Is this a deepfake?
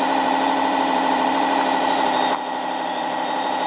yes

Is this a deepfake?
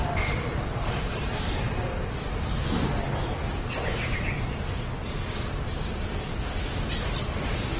no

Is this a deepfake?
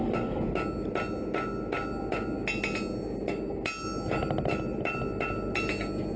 no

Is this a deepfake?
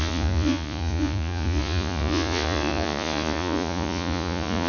yes